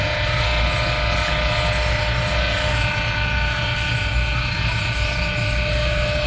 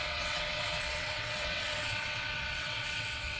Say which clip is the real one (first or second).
first